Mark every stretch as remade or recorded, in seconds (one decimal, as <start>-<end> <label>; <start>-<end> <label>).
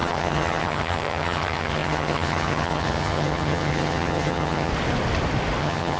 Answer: 0.0-4.7 remade; 4.7-5.6 recorded; 5.6-6.0 remade